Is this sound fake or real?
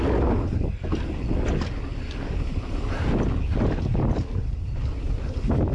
real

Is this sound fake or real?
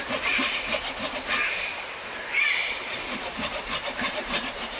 fake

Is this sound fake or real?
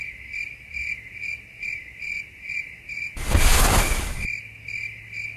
real